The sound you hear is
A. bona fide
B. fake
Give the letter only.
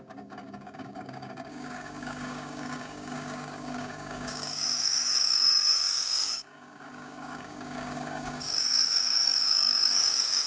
B